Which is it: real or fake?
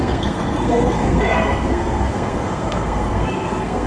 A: fake